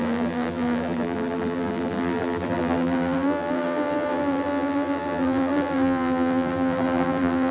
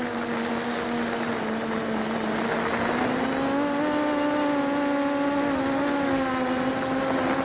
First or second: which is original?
second